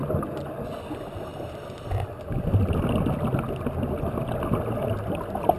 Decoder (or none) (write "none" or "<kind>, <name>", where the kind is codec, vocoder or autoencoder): none